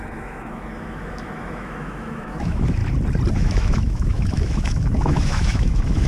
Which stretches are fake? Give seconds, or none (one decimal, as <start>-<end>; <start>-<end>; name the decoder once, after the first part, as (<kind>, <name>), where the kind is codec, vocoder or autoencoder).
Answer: 0.0-2.8 (autoencoder, DAC-VAE); 3.3-6.1